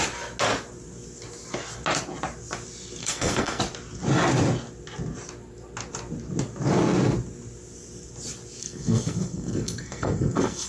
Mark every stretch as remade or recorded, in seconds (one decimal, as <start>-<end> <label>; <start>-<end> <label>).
0.0-3.0 recorded; 3.0-3.6 remade; 3.6-8.6 recorded; 8.6-10.7 remade